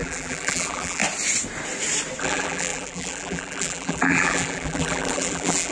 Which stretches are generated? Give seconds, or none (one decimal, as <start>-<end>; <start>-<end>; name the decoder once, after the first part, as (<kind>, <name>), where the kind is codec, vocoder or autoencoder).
0.0-1.0 (vocoder, BigVGAN v2); 2.2-5.7

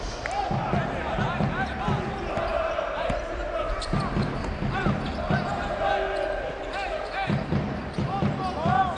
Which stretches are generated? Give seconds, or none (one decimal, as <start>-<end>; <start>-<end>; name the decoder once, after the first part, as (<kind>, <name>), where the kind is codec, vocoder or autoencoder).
2.5-4.0 (vocoder, BigVGAN v2)

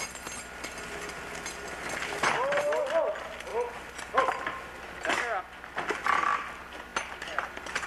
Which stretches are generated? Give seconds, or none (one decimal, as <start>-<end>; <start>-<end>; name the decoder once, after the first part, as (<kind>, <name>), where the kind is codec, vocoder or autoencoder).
none